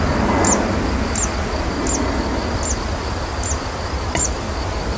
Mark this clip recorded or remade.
recorded